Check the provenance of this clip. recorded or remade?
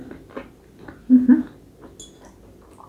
recorded